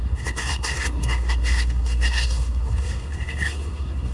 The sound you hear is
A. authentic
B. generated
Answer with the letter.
B